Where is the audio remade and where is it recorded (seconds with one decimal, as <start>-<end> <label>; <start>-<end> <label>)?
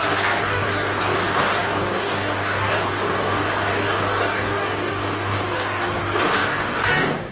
0.0-7.3 remade